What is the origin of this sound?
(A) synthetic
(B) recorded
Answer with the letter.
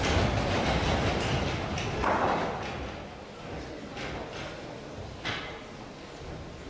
B